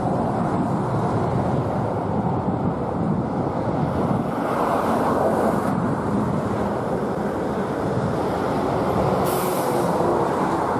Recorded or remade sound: recorded